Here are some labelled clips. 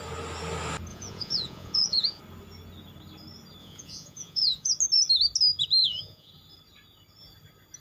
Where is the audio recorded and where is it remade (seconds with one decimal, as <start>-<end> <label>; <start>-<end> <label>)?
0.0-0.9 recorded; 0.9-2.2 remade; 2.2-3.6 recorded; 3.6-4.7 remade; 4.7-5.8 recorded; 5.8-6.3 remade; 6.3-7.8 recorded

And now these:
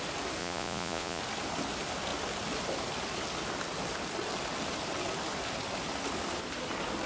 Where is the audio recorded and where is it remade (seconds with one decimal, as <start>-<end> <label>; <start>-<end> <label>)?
0.0-0.4 recorded; 0.4-1.2 remade; 1.2-7.1 recorded

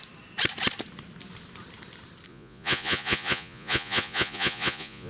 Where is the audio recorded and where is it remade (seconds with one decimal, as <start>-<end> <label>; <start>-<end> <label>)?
0.0-2.3 recorded; 2.3-5.1 remade

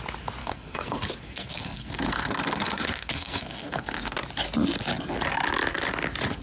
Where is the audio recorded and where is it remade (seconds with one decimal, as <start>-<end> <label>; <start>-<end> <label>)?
0.0-0.4 recorded; 0.4-4.2 remade; 4.2-6.4 recorded

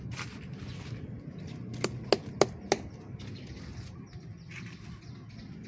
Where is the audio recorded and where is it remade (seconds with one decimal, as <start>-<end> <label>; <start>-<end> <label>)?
0.0-5.7 recorded

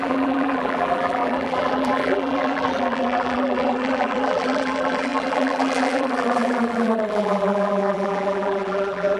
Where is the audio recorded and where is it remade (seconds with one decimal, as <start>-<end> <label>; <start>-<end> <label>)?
0.0-9.2 remade